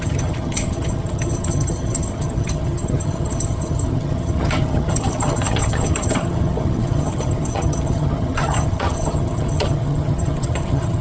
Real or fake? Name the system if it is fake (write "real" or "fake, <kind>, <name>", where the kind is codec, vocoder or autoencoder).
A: fake, vocoder, HiFi-GAN